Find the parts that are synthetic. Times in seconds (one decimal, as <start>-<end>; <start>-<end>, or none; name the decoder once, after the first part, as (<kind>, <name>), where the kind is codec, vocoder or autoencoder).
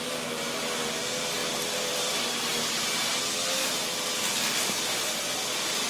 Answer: 1.4-2.1 (vocoder, BigVGAN v2)